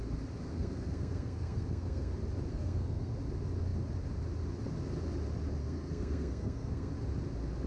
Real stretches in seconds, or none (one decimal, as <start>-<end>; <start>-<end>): 0.0-0.5; 2.1-2.5; 3.1-5.6; 6.9-7.7